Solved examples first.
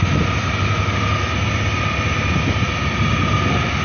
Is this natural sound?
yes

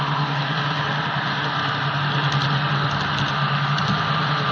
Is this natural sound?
yes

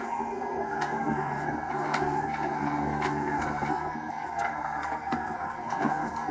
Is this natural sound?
no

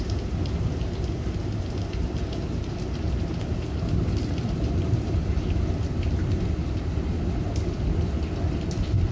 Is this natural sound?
yes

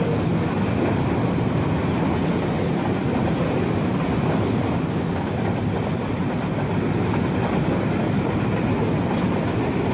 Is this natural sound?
yes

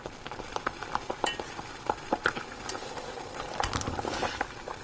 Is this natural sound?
yes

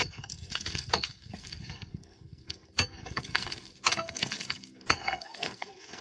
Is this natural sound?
no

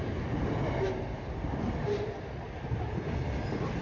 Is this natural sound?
yes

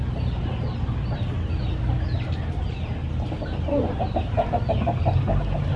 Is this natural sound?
yes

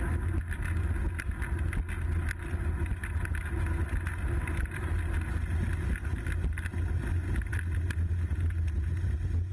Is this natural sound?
yes